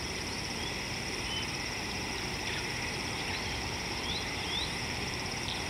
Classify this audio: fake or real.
fake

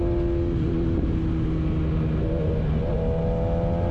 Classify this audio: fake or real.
real